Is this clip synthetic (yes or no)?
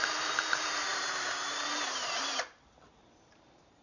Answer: yes